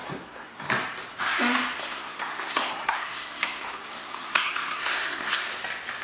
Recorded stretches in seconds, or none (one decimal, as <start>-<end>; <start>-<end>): 0.7-1.8; 5.4-6.0